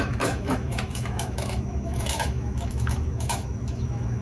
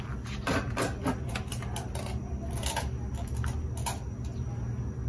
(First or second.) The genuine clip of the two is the second